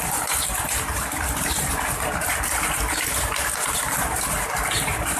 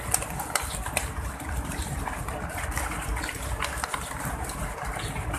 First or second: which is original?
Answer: first